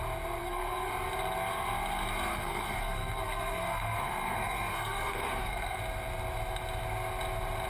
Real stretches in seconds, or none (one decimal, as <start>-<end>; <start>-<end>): 0.0-0.4; 0.9-2.3; 5.8-7.7